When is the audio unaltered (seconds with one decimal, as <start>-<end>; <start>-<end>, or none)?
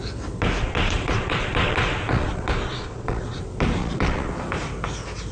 0.0-0.6; 3.4-3.8; 4.3-5.3